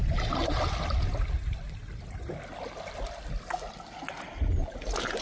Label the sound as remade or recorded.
recorded